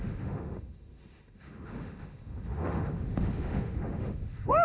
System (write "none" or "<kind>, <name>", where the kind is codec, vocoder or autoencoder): autoencoder, DAC-VAE